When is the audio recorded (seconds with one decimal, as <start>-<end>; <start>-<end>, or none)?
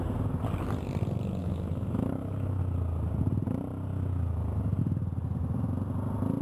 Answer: 0.0-1.4; 2.6-6.4